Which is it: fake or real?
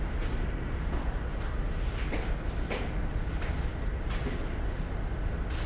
real